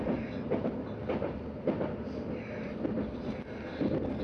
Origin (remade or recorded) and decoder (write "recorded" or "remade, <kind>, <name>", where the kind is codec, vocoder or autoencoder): recorded